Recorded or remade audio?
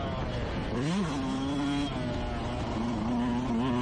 recorded